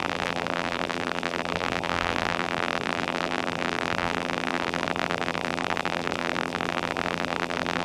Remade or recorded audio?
remade